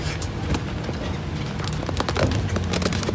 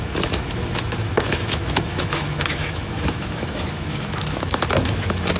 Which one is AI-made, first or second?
second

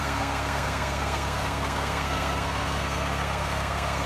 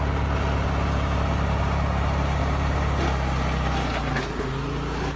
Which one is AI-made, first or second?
first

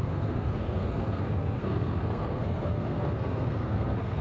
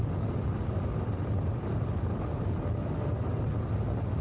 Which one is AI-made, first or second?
first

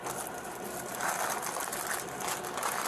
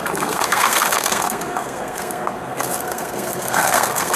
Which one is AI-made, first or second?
second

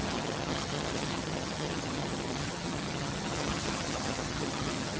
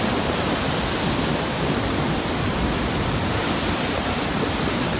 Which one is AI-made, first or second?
first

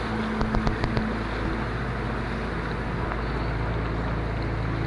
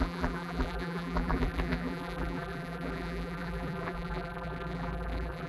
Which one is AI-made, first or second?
second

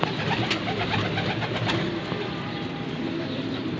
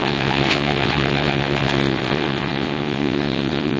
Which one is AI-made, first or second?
second